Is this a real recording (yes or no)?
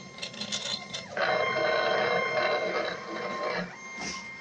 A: yes